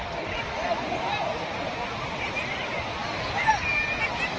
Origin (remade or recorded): recorded